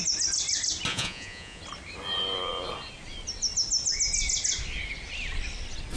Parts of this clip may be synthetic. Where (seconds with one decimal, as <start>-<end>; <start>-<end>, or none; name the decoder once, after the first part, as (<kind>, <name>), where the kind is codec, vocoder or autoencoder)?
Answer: 0.9-1.6 (vocoder, Vocos)